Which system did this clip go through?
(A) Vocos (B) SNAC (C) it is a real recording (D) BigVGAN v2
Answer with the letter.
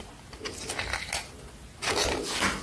C